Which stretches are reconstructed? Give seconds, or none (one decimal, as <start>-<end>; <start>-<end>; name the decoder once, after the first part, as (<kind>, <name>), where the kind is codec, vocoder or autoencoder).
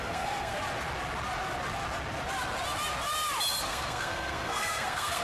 0.0-0.5 (codec, SNAC); 3.6-5.2